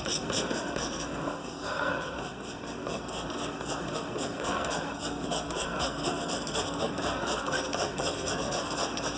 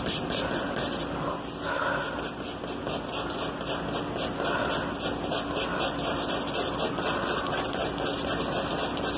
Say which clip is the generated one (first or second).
first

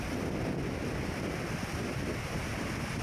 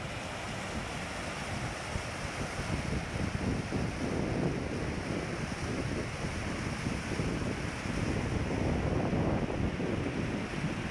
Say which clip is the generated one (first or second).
first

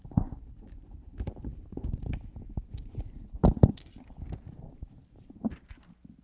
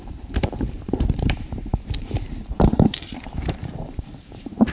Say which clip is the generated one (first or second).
second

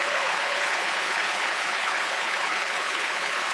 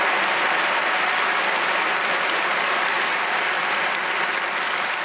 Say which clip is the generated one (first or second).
first